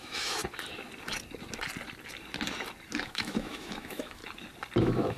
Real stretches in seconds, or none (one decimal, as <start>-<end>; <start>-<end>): 0.4-3.0; 4.2-4.8